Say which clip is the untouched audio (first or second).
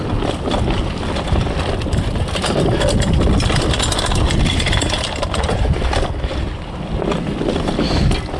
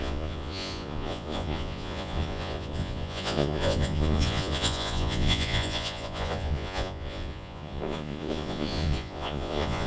first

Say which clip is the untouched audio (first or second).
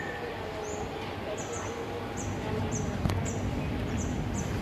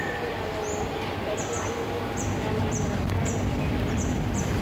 first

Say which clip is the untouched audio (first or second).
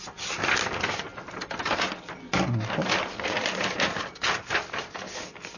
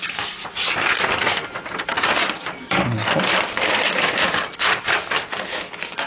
first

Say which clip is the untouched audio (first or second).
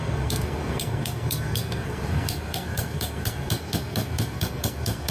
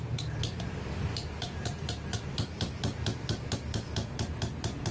second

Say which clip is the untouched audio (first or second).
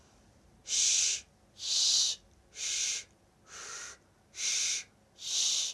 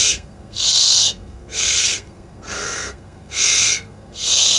first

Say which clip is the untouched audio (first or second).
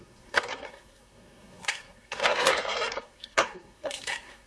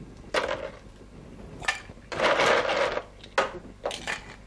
second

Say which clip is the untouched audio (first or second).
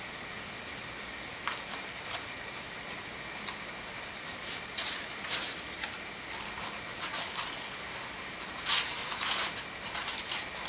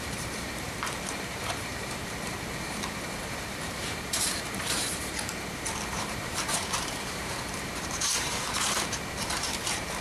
first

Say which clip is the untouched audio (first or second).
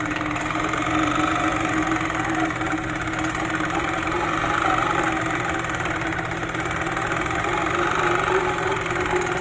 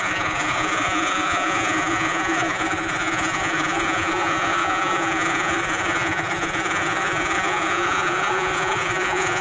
first